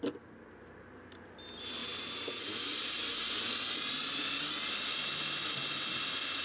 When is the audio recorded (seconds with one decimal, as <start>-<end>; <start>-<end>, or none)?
0.0-6.4